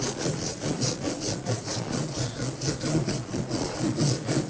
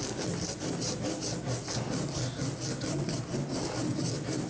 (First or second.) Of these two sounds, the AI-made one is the first